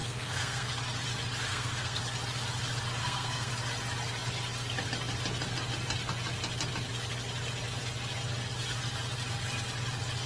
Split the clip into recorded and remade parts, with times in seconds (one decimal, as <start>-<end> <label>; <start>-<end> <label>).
0.0-0.7 remade; 0.7-1.5 recorded; 1.5-2.0 remade; 2.0-3.0 recorded; 3.0-3.5 remade; 3.5-10.3 recorded